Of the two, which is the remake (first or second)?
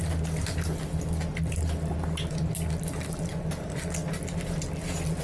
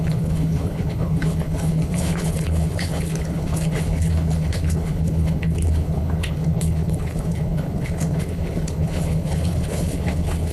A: second